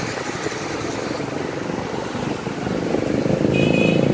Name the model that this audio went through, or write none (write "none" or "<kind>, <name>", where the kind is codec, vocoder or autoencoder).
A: none